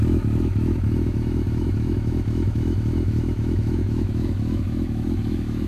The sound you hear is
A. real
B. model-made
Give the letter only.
B